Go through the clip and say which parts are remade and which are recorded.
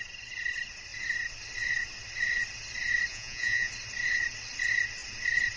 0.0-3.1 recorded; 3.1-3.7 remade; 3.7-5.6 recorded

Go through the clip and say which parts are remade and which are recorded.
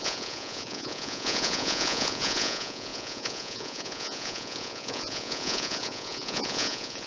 0.0-7.1 remade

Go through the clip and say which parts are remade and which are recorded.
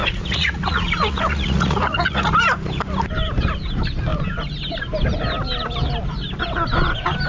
0.0-2.3 remade; 2.3-7.3 recorded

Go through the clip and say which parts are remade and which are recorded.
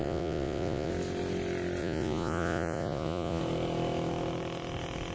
0.0-0.9 remade; 0.9-1.8 recorded; 1.8-3.4 remade; 3.4-5.1 recorded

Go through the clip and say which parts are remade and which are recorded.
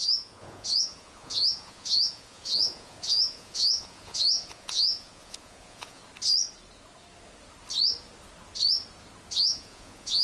0.0-6.0 remade; 6.0-9.4 recorded; 9.4-10.2 remade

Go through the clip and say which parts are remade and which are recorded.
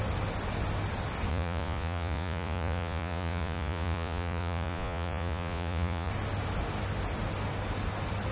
0.0-1.3 recorded; 1.3-6.1 remade; 6.1-8.3 recorded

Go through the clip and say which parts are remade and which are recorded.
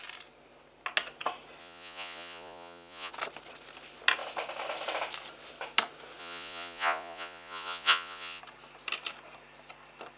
0.0-1.6 recorded; 1.6-3.1 remade; 3.1-6.2 recorded; 6.2-8.4 remade; 8.4-10.2 recorded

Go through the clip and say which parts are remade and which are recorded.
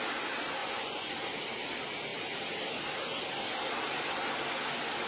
0.0-0.6 recorded; 0.6-1.1 remade; 1.1-5.1 recorded